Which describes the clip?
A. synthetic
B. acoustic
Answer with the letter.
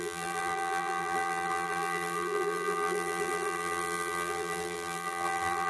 A